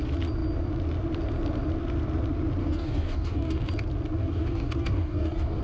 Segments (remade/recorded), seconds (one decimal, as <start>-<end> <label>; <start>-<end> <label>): 0.0-2.6 recorded; 2.6-3.7 remade; 3.7-4.2 recorded; 4.2-5.6 remade